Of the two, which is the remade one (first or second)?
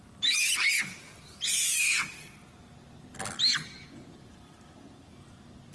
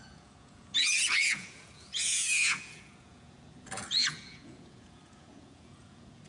second